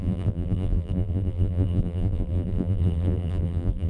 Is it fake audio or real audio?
fake